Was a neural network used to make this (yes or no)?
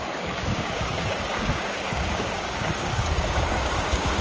yes